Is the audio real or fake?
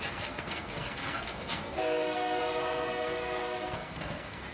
fake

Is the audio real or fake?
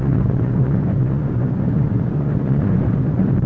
fake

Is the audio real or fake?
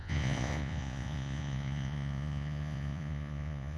fake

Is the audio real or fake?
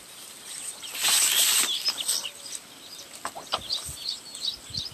real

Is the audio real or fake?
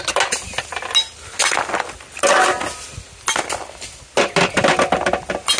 real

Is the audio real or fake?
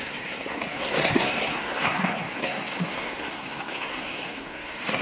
fake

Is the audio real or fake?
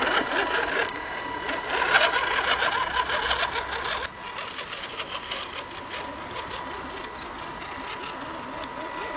real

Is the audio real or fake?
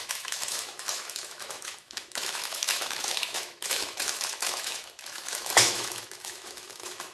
fake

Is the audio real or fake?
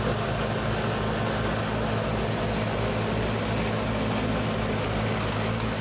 real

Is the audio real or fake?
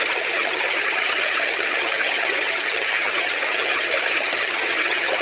fake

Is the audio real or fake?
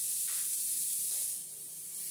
real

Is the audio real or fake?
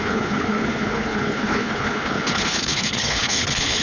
fake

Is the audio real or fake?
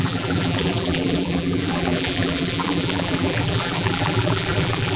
fake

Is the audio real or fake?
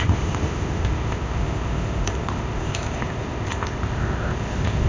fake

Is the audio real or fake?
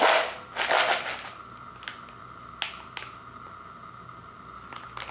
real